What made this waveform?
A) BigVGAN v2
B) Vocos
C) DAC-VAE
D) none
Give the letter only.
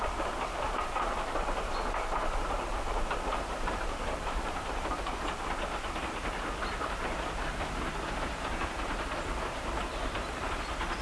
A